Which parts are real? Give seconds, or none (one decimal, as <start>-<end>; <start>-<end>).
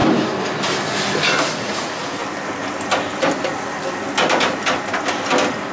0.0-1.4; 2.2-5.7